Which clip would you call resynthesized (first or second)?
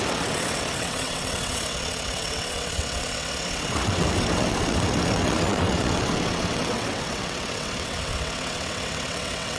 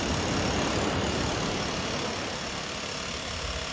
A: first